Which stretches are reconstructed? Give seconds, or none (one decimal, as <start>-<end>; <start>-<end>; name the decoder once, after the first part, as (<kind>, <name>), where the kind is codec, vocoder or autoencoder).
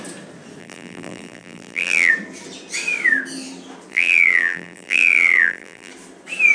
0.6-2.1 (vocoder, BigVGAN v2); 3.9-5.9